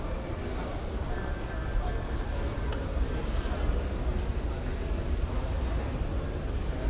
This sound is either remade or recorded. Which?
recorded